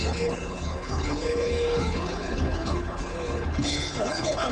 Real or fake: fake